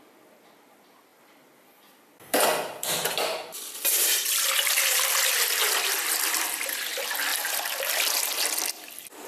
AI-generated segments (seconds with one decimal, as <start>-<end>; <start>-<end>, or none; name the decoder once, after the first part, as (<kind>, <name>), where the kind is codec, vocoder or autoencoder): 1.1-3.8 (vocoder, BigVGAN v2); 6.0-6.5; 7.3-8.3